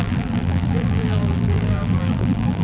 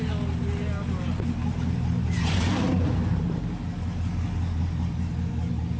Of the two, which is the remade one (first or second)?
first